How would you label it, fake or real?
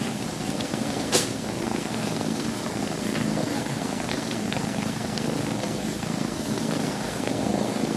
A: fake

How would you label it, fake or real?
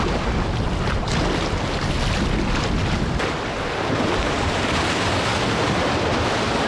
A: real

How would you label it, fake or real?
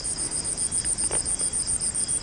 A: fake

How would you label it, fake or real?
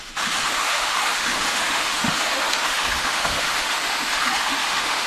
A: fake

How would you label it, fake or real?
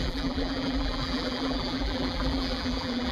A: fake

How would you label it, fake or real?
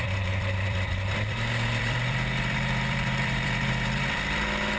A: fake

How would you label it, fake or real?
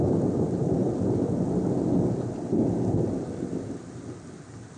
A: real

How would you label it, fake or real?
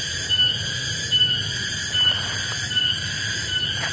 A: real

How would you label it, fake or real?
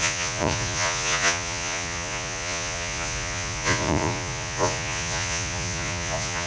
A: fake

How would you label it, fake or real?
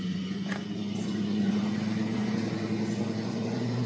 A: fake